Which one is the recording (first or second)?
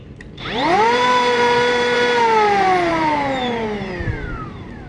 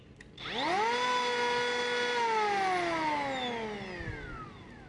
second